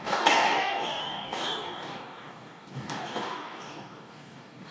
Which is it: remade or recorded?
remade